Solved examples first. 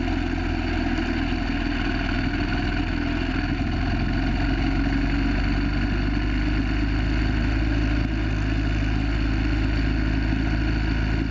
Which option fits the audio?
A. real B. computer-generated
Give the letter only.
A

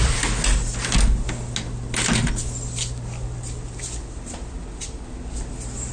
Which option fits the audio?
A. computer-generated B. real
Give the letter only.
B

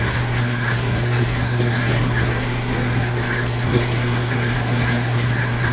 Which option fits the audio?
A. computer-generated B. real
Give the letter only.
A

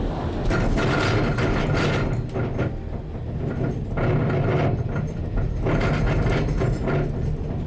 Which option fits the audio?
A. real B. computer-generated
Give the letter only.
A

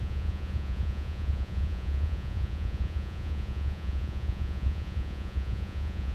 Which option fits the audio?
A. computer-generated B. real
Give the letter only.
A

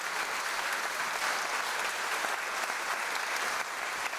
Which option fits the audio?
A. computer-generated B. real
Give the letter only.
B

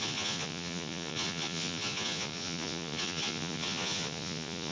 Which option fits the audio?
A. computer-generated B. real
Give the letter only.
A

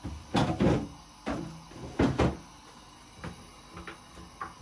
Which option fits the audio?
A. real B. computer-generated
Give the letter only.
A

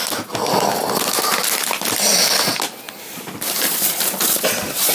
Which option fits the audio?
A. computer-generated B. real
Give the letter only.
B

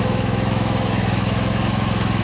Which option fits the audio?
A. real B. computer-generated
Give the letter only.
B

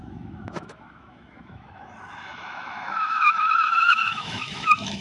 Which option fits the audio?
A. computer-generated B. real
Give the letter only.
A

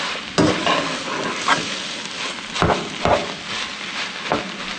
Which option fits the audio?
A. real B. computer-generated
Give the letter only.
A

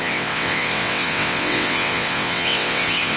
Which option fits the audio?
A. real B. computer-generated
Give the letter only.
B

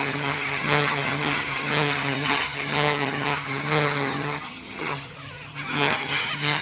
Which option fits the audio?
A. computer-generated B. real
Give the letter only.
A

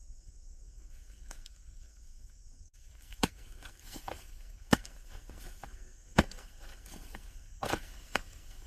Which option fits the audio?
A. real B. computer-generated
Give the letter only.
B